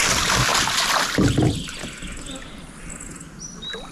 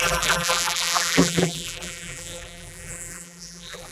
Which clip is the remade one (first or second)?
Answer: second